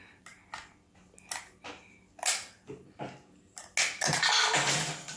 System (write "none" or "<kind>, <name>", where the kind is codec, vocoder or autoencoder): none